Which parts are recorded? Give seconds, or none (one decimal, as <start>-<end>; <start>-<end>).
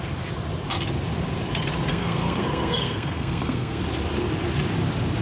0.0-1.9; 3.8-5.2